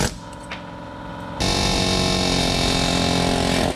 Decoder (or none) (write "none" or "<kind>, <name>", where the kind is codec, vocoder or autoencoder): none